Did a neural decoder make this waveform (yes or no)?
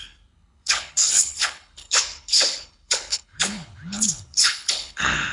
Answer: yes